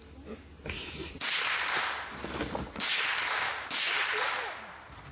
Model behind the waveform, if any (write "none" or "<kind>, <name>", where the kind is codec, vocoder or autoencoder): none